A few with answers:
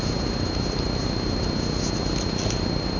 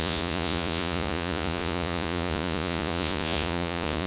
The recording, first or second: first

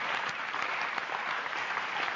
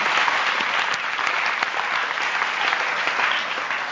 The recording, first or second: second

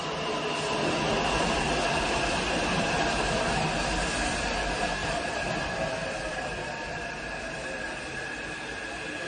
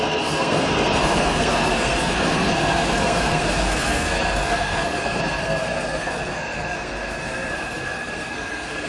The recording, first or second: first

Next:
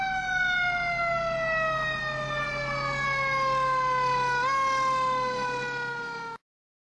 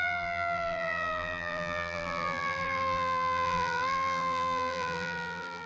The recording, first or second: first